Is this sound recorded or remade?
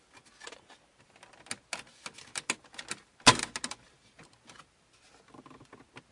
recorded